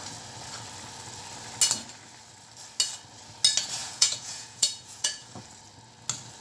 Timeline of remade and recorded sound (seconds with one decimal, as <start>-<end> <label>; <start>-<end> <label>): 0.0-3.8 recorded; 3.8-5.4 remade; 5.4-6.4 recorded